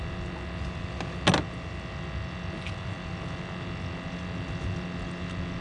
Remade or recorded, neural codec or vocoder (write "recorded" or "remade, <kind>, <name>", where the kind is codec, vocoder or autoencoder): recorded